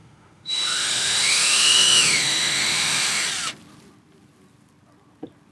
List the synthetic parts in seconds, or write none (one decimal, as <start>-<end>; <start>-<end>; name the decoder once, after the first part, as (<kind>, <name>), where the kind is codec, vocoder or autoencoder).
0.0-3.3 (autoencoder, DAC-VAE)